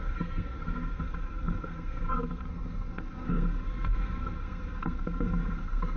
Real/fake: fake